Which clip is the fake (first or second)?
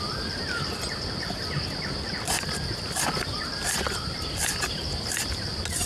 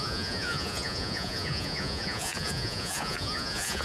second